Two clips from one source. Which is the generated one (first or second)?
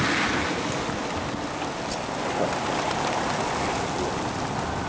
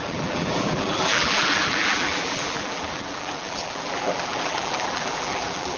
second